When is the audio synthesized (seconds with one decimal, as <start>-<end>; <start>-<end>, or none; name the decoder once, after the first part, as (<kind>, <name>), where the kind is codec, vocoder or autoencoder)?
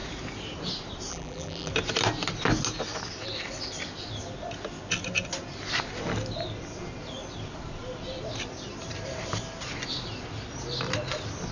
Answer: 1.1-1.7 (vocoder, BigVGAN v2)